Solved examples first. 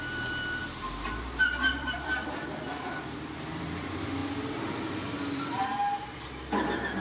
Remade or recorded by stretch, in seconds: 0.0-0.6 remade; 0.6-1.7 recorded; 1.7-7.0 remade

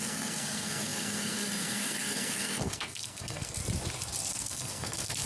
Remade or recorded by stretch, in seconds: 0.0-3.6 remade; 3.6-4.3 recorded; 4.3-5.3 remade

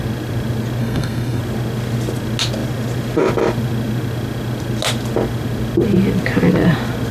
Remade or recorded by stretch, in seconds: 0.0-0.8 recorded; 0.8-1.4 remade; 1.4-7.1 recorded

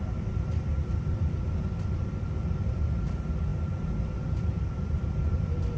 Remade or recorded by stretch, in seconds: 0.0-5.8 remade